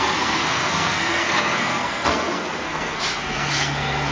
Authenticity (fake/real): fake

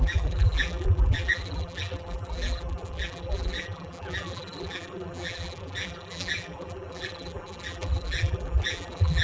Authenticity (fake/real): fake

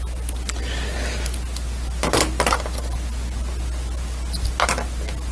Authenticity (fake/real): real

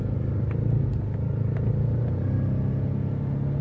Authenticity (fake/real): real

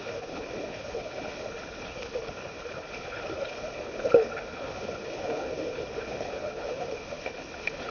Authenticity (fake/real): fake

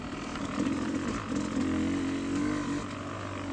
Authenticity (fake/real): real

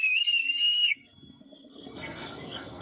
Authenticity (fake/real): fake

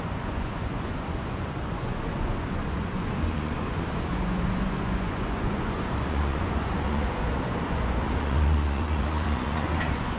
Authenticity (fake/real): fake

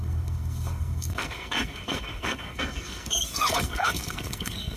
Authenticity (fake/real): fake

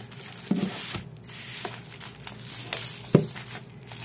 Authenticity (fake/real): real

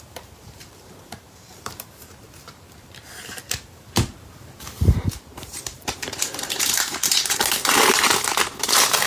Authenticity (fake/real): fake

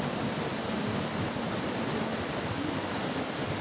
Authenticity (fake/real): real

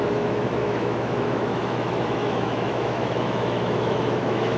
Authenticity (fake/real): fake